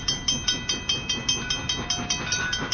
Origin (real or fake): real